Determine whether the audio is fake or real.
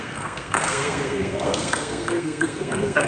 fake